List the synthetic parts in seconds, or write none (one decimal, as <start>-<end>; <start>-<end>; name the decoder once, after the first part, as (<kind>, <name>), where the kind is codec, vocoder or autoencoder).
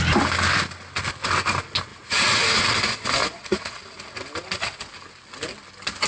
1.9-2.6 (vocoder, Vocos); 3.2-3.8